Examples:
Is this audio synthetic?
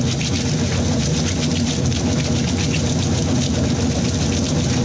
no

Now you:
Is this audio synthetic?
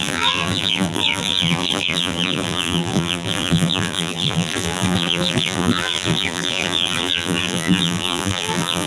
yes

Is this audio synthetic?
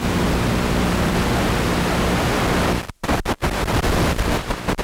no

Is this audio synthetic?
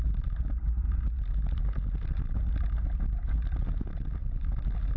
no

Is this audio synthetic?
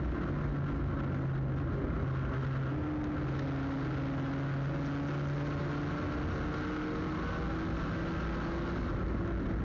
no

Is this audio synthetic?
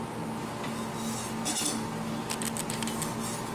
no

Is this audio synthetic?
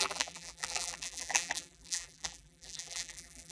yes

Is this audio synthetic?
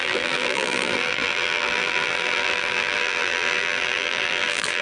yes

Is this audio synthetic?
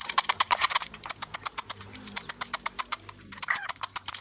yes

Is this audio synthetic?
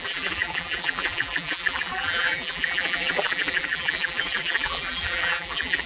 yes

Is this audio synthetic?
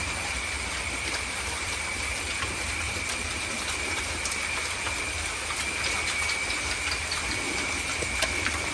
yes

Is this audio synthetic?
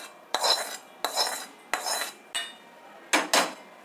no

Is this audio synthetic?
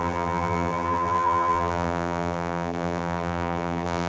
yes